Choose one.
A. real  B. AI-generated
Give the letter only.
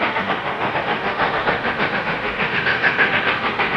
B